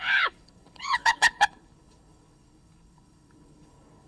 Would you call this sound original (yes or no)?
no